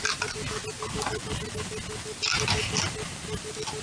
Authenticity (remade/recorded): recorded